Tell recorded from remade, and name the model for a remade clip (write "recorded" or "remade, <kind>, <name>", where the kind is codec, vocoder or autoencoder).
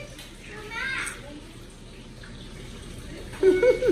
recorded